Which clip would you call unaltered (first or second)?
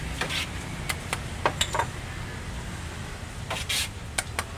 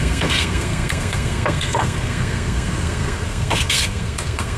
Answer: first